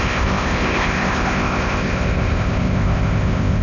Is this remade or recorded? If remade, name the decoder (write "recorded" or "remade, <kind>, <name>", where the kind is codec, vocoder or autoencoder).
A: remade, codec, ZipCodec